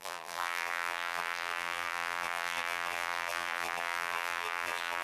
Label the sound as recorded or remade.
remade